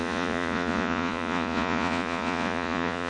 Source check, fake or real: fake